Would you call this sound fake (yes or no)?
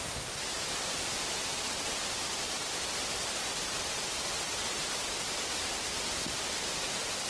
no